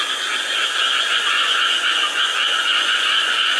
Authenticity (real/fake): fake